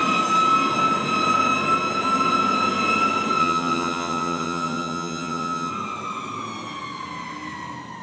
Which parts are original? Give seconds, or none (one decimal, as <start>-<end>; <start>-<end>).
0.0-3.4; 5.7-8.0